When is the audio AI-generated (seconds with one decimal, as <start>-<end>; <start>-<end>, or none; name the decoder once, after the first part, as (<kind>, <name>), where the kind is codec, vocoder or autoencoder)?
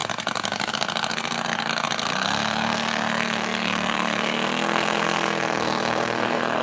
0.0-6.6 (codec, SNAC)